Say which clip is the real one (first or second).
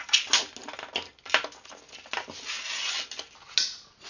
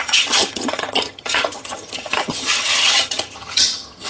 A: first